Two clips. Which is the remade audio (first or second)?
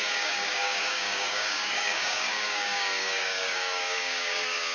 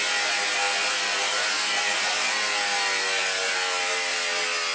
first